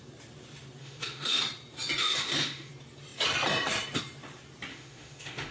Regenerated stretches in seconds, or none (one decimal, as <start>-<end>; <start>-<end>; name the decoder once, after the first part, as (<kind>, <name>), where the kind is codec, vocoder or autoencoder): 0.8-1.4 (autoencoder, DAC-VAE); 2.0-2.7; 4.7-5.5